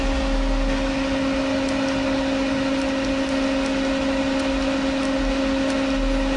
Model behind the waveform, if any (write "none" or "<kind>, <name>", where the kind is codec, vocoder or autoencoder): none